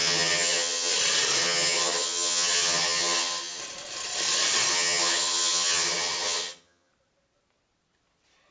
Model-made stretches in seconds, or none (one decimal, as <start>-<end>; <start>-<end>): 0.0-0.9; 1.4-3.6; 4.7-6.9